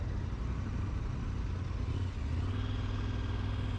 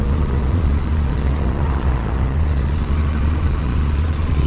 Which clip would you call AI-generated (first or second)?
second